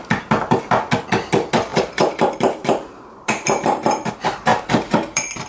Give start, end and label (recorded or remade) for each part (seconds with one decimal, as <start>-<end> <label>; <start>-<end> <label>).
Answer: 0.0-1.7 recorded; 1.7-4.1 remade; 4.1-4.5 recorded; 4.5-5.5 remade